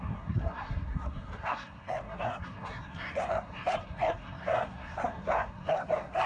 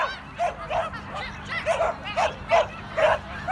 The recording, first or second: second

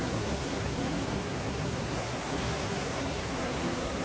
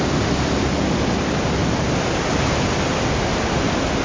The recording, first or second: second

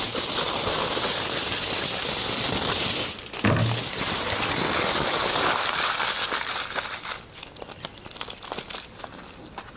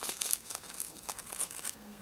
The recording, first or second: first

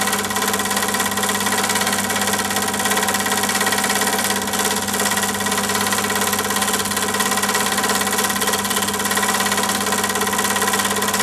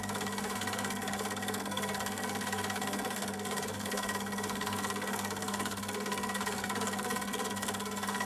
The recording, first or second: first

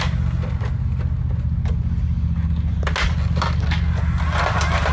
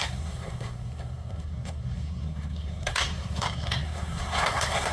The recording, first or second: first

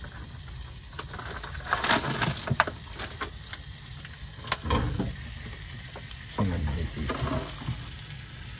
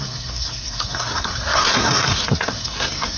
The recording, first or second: first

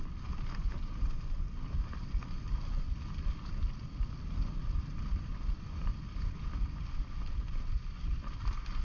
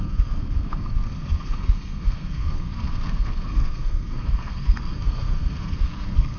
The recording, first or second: first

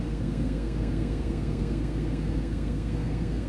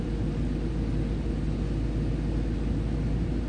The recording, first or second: second